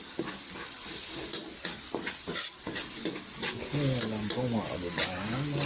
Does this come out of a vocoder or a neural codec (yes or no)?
no